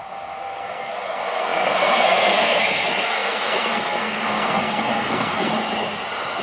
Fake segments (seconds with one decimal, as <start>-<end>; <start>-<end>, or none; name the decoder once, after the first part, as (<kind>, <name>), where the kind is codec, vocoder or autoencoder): 0.0-5.5 (codec, SNAC)